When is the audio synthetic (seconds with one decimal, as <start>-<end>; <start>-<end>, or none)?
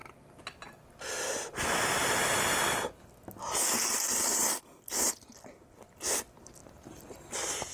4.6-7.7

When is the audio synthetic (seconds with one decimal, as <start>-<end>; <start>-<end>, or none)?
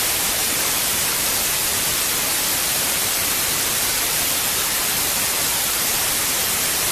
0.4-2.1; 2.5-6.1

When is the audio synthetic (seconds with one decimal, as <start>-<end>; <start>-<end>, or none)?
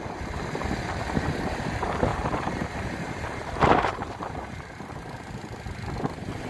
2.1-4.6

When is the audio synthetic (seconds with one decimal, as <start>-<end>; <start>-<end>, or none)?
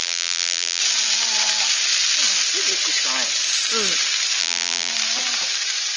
0.0-0.8; 4.4-4.9